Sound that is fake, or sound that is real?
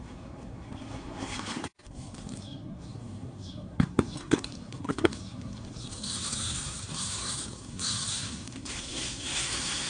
fake